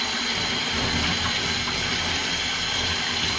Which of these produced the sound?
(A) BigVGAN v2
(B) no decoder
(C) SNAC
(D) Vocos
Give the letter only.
A